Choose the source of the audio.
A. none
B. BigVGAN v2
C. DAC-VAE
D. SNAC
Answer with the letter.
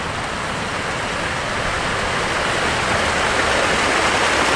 A